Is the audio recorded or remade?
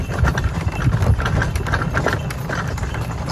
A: recorded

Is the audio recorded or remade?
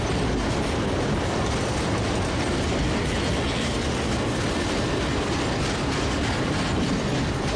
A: recorded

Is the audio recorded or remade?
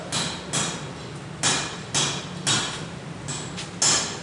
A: recorded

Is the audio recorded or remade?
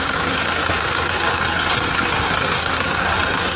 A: remade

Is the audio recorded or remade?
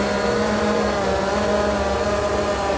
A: recorded